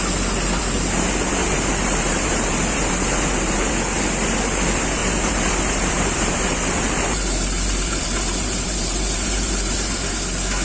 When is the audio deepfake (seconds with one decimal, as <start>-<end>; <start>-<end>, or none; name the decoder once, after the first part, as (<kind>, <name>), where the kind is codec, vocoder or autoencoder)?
1.4-3.7 (vocoder, BigVGAN v2); 5.0-10.1